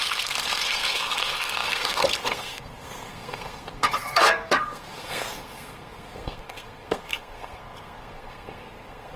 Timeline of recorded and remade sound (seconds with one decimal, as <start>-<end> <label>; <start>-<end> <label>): 0.0-9.2 remade